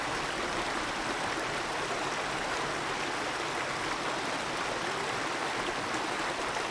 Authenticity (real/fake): real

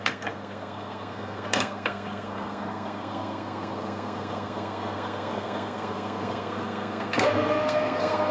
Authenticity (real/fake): fake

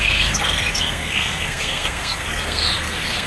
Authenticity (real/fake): fake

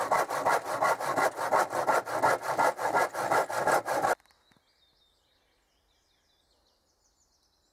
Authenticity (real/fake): real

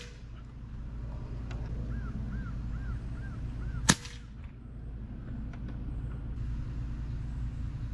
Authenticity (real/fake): real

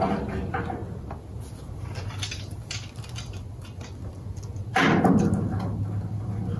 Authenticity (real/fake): real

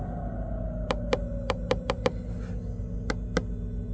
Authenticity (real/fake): real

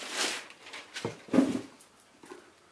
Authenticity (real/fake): real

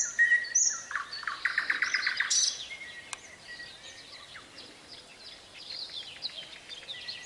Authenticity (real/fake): real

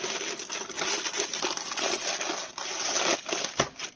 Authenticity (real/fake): real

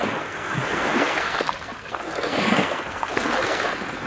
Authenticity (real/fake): fake